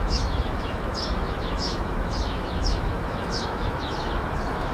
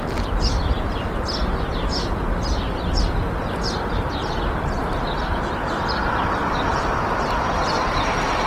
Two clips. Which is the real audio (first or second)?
second